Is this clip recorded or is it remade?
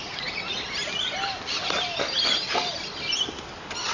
recorded